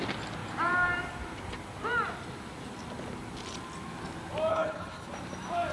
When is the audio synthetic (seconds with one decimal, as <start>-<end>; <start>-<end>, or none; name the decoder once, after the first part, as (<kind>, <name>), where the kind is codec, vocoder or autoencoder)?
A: 4.5-5.1 (codec, HILCodec)